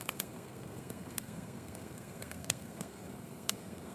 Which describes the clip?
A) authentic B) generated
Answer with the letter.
B